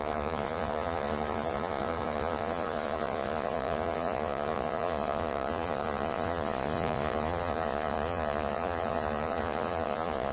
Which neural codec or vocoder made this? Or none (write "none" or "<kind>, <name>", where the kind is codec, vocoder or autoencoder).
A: vocoder, Vocos